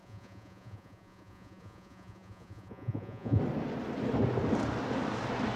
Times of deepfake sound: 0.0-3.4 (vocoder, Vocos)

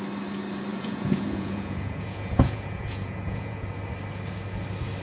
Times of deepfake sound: 0.7-3.7 (vocoder, Vocos)

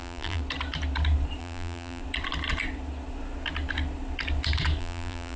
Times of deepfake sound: 0.0-0.4 (vocoder, BigVGAN v2); 1.4-2.0; 4.8-5.4